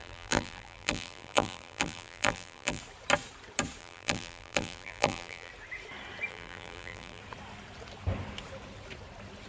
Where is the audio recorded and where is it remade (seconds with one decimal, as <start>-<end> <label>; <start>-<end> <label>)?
0.0-2.8 remade; 2.8-3.8 recorded; 3.8-5.5 remade; 5.5-6.3 recorded; 6.3-7.2 remade; 7.2-9.5 recorded